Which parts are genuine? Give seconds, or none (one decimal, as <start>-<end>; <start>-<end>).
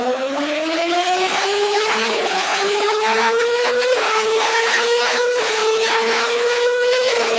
none